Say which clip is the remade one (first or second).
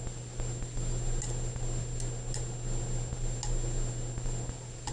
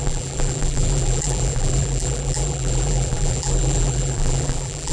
second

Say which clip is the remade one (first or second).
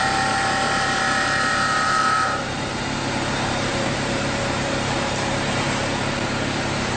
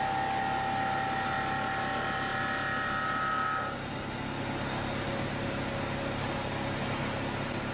first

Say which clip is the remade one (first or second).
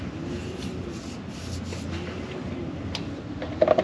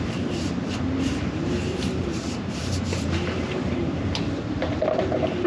second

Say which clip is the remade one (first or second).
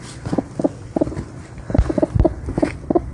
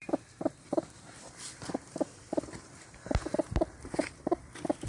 second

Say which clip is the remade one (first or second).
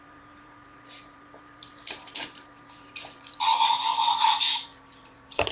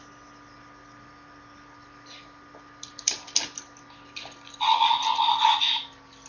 first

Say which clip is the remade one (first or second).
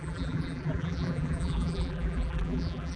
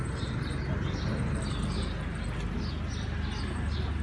first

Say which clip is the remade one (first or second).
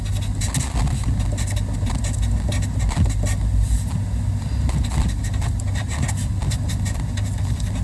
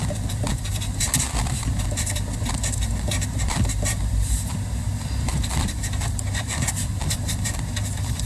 second